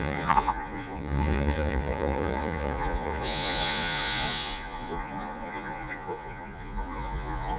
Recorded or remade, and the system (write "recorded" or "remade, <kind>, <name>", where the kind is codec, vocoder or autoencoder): remade, vocoder, Vocos